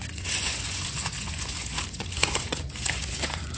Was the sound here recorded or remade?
remade